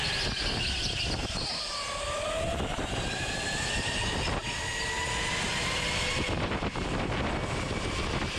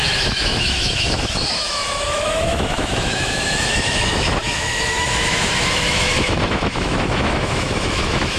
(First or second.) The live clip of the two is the first